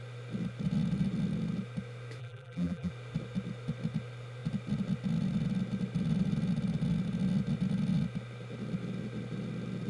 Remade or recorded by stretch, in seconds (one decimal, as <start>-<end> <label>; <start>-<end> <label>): 0.0-2.2 recorded; 2.2-2.9 remade; 2.9-9.9 recorded